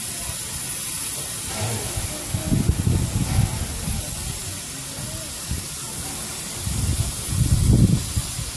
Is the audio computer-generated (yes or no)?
no